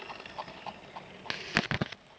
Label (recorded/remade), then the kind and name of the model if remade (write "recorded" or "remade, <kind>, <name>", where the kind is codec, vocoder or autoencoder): recorded